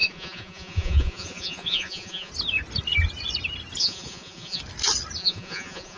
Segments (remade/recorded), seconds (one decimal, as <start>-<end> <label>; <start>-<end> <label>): 0.0-2.3 remade; 2.3-3.8 recorded; 3.8-4.6 remade; 4.6-5.2 recorded; 5.2-6.0 remade

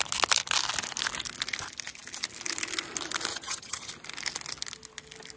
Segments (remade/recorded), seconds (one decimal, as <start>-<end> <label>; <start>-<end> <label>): 0.0-3.3 recorded; 3.3-3.9 remade; 3.9-5.4 recorded

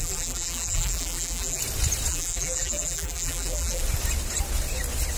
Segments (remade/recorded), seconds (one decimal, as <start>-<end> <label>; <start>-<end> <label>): 0.0-1.6 remade; 1.6-2.1 recorded; 2.1-3.8 remade; 3.8-5.2 recorded

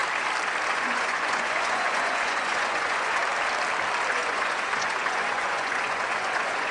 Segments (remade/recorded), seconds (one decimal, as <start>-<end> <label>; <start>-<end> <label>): 0.0-0.7 recorded; 0.7-3.2 remade; 3.2-4.1 recorded; 4.1-6.7 remade

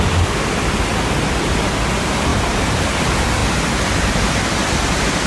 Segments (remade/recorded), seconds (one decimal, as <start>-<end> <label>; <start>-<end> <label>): 0.0-2.3 recorded; 2.3-2.9 remade; 2.9-5.3 recorded

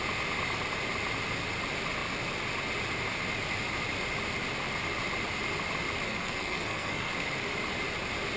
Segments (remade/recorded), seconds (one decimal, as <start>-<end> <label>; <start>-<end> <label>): 0.0-6.1 recorded; 6.1-7.1 remade; 7.1-8.4 recorded

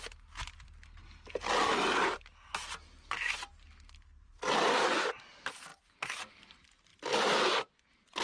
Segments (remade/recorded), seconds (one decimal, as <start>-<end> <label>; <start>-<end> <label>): 0.0-6.9 recorded; 6.9-7.5 remade; 7.5-8.2 recorded

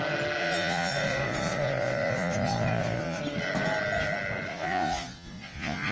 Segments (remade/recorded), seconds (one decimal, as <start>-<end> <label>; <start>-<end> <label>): 0.0-0.4 recorded; 0.4-3.2 remade; 3.2-4.5 recorded; 4.5-5.9 remade